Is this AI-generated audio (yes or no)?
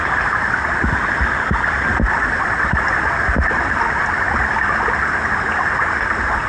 no